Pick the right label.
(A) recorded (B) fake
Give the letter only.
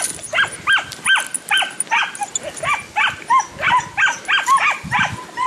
A